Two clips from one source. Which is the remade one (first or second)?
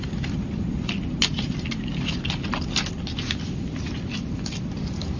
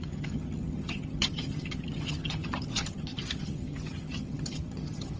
second